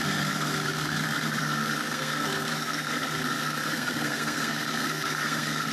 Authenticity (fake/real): fake